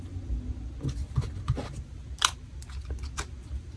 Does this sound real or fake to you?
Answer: real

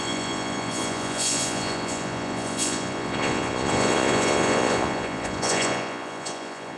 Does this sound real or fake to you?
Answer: fake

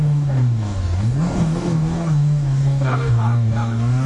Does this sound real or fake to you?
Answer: fake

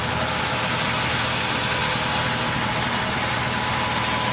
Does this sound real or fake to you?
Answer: real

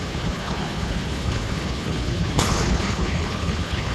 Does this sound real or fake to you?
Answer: fake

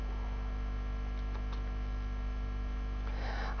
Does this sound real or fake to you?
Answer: real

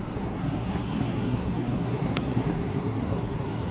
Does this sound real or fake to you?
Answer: fake